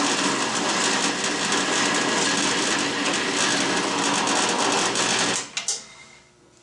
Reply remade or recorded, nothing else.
recorded